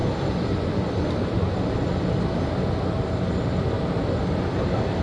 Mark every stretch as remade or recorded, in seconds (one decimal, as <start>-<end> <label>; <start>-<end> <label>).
0.0-5.0 recorded